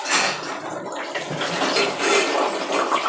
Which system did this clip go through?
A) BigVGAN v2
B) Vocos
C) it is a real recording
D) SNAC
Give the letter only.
C